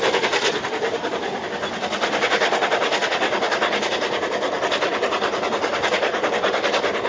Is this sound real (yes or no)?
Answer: yes